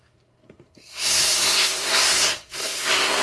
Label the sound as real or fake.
fake